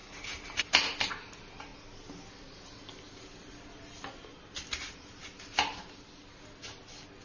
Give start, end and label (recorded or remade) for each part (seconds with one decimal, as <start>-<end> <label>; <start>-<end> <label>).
0.0-7.2 recorded

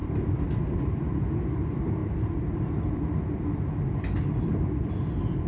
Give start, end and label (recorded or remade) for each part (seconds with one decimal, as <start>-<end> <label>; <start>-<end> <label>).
0.0-2.0 recorded; 2.0-4.9 remade; 4.9-5.5 recorded

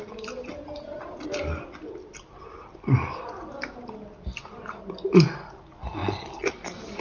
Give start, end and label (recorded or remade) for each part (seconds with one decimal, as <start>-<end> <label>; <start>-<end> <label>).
0.0-7.0 recorded

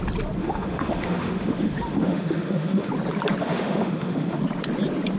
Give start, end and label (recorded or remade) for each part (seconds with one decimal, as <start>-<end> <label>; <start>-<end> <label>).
0.0-0.4 recorded; 0.4-2.9 remade; 2.9-3.4 recorded; 3.4-4.4 remade; 4.4-5.2 recorded

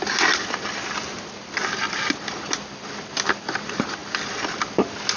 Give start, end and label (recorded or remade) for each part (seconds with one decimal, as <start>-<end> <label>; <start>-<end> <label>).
0.0-5.2 recorded

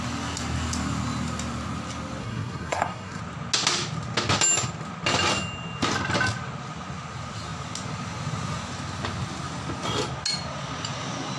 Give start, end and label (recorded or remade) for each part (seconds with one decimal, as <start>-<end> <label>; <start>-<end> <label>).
0.0-2.2 recorded; 2.2-3.2 remade; 3.2-11.4 recorded

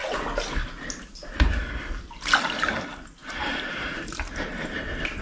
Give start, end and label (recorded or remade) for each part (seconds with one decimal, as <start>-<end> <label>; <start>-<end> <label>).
0.0-3.2 recorded; 3.2-5.2 remade